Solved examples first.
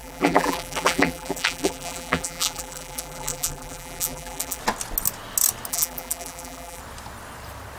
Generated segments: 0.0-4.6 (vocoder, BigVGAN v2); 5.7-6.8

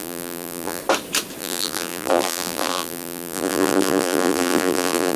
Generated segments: 0.0-0.8 (vocoder, BigVGAN v2); 1.4-5.2